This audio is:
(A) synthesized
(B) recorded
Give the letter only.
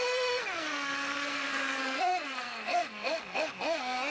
A